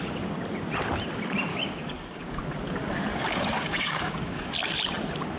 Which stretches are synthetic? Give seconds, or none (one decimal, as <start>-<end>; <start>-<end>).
1.5-2.4; 3.1-4.5